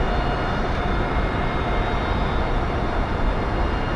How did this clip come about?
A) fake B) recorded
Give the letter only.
B